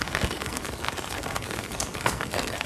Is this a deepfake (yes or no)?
yes